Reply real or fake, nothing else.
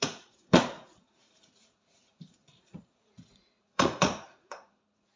fake